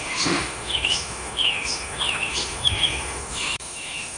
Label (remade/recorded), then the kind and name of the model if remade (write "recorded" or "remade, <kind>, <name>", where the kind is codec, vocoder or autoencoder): remade, autoencoder, DAC-VAE